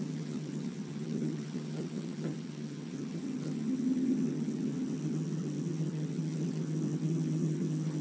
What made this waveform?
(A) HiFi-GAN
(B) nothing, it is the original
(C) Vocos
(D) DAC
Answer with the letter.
A